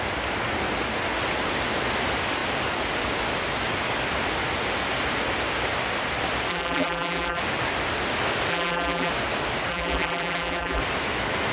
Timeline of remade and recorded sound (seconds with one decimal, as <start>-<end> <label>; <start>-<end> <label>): 0.0-6.5 recorded; 6.5-7.4 remade; 7.4-8.5 recorded; 8.5-9.1 remade; 9.1-9.7 recorded; 9.7-10.8 remade; 10.8-11.5 recorded